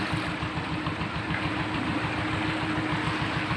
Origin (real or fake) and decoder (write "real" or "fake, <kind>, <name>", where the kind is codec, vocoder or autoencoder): real